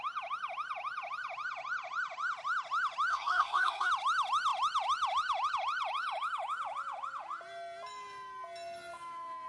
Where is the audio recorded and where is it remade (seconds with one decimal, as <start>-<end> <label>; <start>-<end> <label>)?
0.0-3.1 recorded; 3.1-3.9 remade; 3.9-9.5 recorded